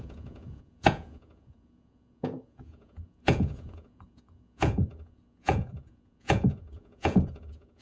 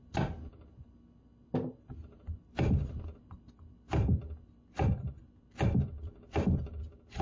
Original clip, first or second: second